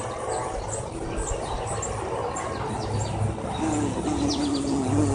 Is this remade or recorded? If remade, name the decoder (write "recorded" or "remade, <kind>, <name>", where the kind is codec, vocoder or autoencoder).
recorded